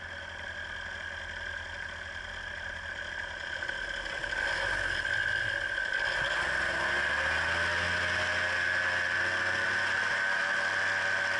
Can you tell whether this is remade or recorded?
recorded